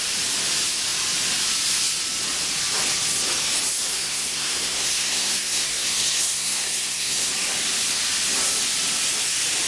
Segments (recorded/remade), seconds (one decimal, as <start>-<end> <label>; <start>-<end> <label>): 0.0-3.9 recorded; 3.9-7.3 remade; 7.3-9.7 recorded